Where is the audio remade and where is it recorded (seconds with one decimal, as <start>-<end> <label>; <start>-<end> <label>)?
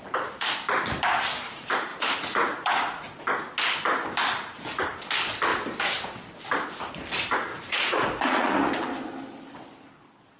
0.0-1.9 recorded; 1.9-3.2 remade; 3.2-7.5 recorded; 7.5-8.7 remade; 8.7-10.4 recorded